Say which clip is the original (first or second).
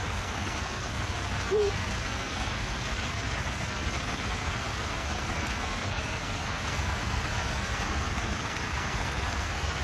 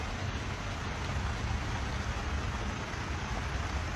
second